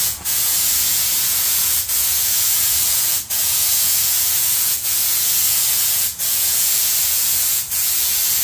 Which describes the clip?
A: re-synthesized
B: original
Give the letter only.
A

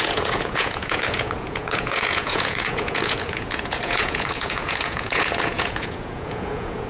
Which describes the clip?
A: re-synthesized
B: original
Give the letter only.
A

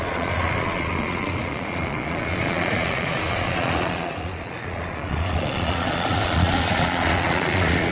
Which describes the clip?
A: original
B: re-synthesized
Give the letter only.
B